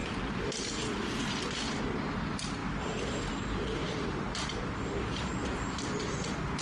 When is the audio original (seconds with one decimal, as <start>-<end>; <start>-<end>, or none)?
1.0-2.6; 3.3-3.8; 4.7-5.4